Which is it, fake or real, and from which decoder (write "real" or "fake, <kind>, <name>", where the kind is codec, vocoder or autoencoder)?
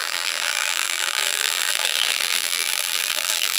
fake, vocoder, BigVGAN v2